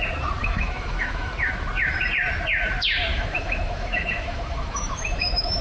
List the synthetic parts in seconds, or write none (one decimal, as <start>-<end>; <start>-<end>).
0.4-1.3; 3.1-5.6